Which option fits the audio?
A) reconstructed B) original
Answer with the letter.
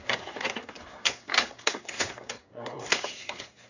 A